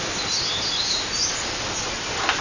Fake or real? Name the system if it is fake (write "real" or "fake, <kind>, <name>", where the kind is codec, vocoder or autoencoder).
real